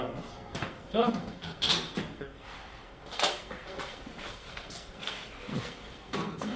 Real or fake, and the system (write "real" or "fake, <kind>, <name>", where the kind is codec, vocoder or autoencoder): fake, codec, SNAC